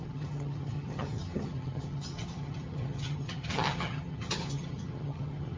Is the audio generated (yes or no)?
yes